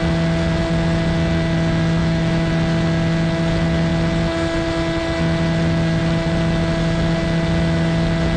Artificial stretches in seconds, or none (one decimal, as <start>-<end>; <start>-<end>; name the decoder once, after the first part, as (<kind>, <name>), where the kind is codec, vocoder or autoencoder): 2.0-2.5 (autoencoder, DAC-VAE)